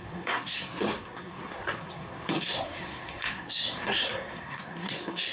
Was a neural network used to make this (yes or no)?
yes